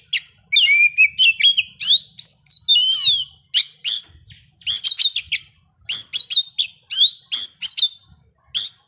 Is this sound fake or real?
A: real